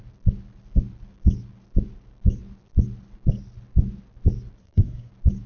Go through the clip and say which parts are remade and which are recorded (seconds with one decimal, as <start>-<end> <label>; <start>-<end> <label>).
0.0-4.6 recorded; 4.6-5.1 remade; 5.1-5.5 recorded